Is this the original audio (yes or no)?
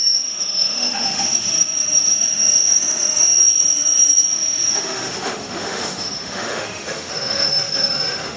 no